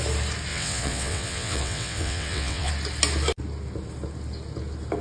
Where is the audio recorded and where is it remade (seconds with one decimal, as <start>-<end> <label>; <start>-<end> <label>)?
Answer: 0.0-0.5 recorded; 0.5-2.7 remade; 2.7-5.0 recorded